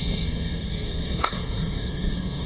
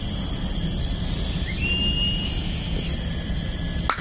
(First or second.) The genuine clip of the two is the second